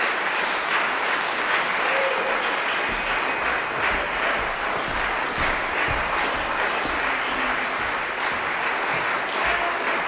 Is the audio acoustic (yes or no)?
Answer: yes